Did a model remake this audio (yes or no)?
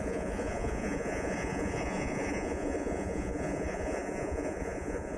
yes